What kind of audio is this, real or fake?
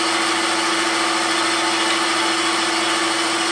real